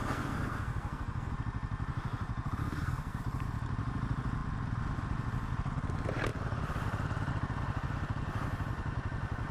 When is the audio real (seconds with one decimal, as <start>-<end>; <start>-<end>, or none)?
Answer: 1.3-2.6; 3.2-9.5